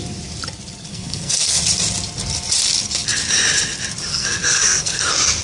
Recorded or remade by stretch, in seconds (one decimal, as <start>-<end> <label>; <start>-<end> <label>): 0.0-0.9 recorded; 0.9-1.6 remade; 1.6-4.1 recorded; 4.1-5.0 remade; 5.0-5.4 recorded